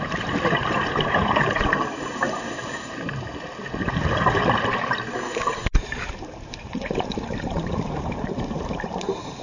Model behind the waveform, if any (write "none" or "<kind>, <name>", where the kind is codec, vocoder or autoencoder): vocoder, BigVGAN v2